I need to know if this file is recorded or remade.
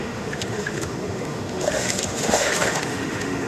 remade